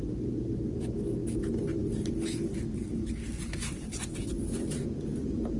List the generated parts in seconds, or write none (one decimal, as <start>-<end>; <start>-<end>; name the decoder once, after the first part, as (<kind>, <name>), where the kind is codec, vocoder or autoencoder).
none